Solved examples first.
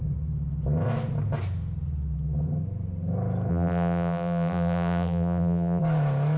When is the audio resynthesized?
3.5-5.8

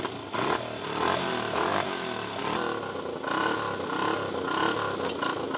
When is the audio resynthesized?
none

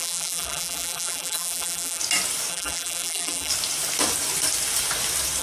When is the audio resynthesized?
0.0-2.0; 2.5-3.5

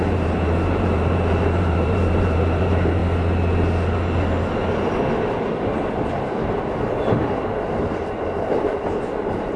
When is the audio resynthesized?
0.0-3.0; 7.8-9.6

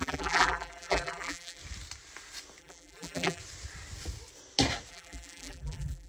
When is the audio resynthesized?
0.0-1.6; 2.6-3.4; 4.9-6.1

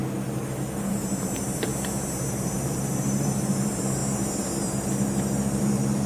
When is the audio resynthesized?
0.9-1.7; 2.3-4.0; 5.6-6.1

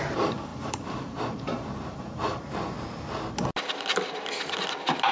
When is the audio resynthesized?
0.5-2.4